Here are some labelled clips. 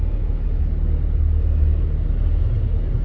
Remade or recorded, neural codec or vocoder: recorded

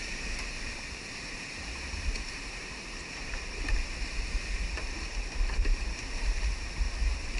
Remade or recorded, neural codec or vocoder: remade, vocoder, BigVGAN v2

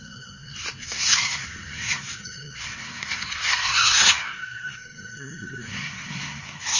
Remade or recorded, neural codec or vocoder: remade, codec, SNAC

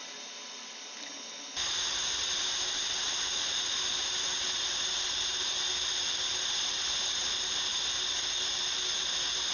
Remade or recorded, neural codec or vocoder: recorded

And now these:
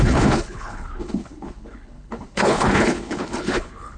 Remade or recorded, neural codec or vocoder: remade, codec, HILCodec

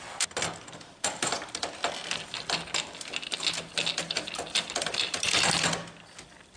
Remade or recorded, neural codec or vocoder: recorded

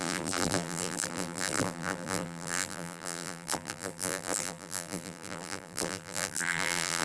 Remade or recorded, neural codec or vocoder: remade, vocoder, BigVGAN v2